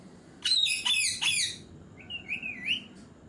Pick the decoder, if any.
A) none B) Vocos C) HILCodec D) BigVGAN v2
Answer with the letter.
A